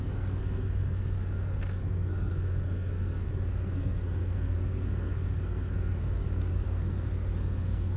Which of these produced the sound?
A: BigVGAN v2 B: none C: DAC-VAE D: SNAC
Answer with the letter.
D